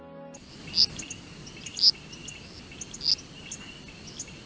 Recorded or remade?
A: recorded